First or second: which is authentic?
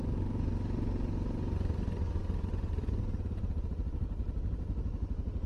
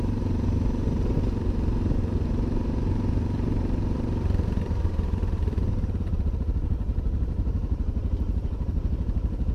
first